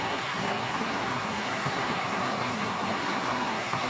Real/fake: fake